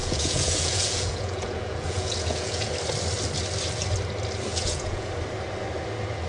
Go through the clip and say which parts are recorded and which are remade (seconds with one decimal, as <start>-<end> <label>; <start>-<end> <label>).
0.0-2.7 remade; 2.7-4.5 recorded; 4.5-5.1 remade; 5.1-6.3 recorded